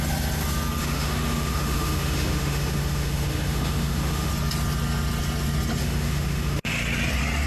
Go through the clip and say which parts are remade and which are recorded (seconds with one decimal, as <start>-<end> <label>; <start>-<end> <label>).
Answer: 0.0-0.8 recorded; 0.8-4.3 remade; 4.3-5.8 recorded; 5.8-6.7 remade; 6.7-7.5 recorded